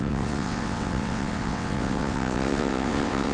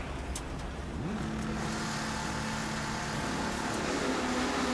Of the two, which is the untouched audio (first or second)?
second